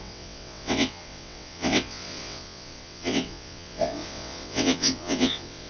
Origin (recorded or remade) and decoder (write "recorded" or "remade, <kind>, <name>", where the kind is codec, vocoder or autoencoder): remade, vocoder, WaveNeXt